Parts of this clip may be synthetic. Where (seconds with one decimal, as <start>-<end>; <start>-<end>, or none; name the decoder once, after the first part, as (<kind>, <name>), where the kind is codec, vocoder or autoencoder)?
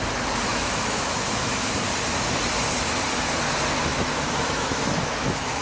0.5-1.8 (autoencoder, DAC-VAE); 3.9-5.6